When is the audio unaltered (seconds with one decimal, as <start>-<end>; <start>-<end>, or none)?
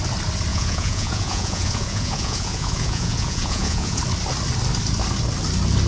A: 0.0-0.5; 4.0-5.9